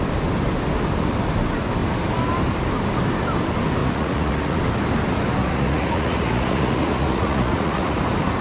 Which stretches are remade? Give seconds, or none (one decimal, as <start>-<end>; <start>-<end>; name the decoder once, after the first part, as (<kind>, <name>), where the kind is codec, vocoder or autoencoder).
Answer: 3.8-4.6 (vocoder, Vocos); 5.4-8.0